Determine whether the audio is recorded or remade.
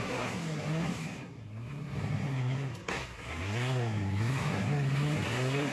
remade